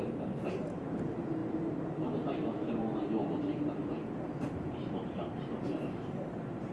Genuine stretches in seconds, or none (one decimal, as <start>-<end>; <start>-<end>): none